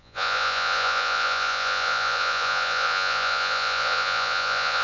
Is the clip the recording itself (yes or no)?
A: no